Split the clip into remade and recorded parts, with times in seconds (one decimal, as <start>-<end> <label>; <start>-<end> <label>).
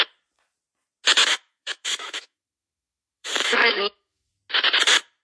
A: 0.0-1.2 recorded; 1.2-4.3 remade; 4.3-5.2 recorded